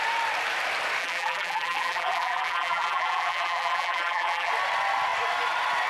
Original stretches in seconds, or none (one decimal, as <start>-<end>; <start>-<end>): 0.0-1.0; 4.5-5.9